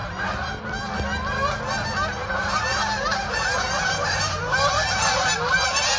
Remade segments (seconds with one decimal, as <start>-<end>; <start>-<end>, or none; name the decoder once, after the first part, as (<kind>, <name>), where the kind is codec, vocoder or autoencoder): 0.0-0.6 (vocoder, BigVGAN v2); 2.2-6.0